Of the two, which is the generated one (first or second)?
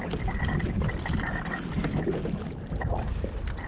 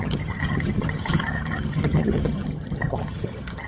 second